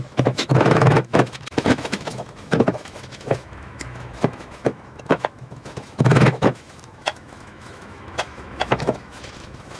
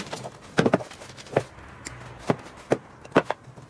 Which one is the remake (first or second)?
first